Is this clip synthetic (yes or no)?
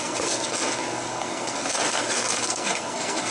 yes